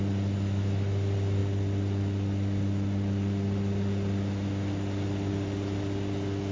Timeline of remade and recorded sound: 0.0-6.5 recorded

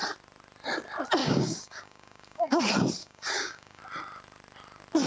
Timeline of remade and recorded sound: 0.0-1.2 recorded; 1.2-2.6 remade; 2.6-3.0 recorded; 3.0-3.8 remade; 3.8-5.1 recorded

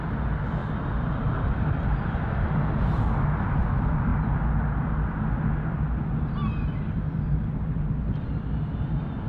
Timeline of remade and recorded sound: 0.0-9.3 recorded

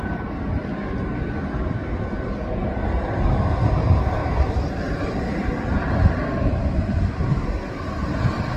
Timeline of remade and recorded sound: 0.0-8.6 recorded

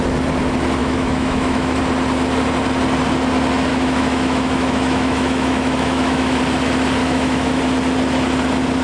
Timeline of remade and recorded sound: 0.0-0.8 recorded; 0.8-1.8 remade; 1.8-3.7 recorded; 3.7-6.4 remade; 6.4-7.0 recorded; 7.0-7.6 remade; 7.6-8.8 recorded

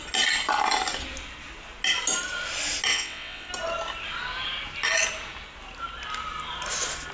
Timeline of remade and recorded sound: 0.0-2.9 recorded; 2.9-3.5 remade; 3.5-7.1 recorded